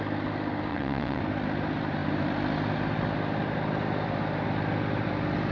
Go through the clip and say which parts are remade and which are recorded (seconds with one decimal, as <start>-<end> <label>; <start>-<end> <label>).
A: 0.0-0.7 recorded; 0.7-1.2 remade; 1.2-5.5 recorded